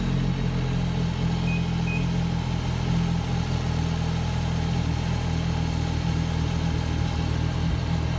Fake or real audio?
real